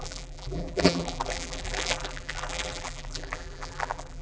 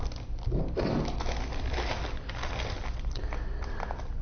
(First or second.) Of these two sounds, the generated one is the first